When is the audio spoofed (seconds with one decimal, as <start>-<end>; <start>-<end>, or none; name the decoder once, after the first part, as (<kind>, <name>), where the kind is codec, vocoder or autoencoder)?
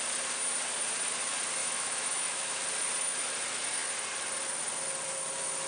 1.6-2.6 (autoencoder, DAC-VAE)